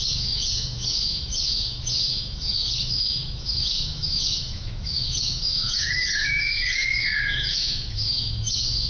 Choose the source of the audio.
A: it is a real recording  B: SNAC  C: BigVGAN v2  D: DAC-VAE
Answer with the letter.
D